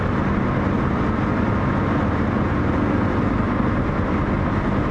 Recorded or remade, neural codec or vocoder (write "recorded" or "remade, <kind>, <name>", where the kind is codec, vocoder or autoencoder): recorded